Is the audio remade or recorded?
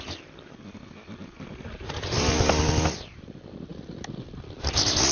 recorded